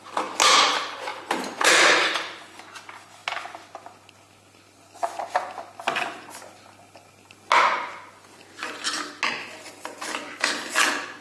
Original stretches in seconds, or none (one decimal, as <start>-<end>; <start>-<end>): 0.0-1.1; 2.6-11.2